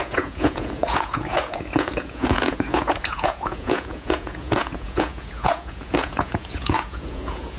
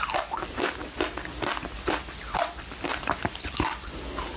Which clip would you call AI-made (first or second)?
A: first